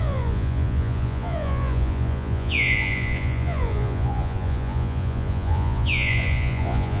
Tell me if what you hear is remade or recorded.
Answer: remade